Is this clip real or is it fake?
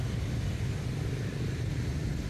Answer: real